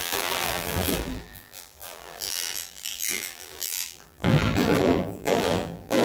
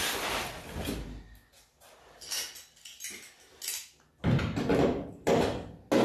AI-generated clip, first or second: first